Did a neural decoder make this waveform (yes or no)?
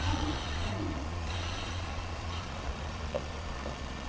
yes